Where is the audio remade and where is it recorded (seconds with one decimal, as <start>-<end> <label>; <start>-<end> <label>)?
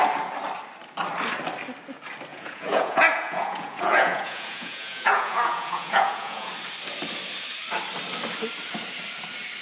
0.0-2.3 recorded; 2.3-6.5 remade; 6.5-9.6 recorded